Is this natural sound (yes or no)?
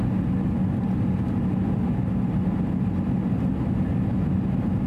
yes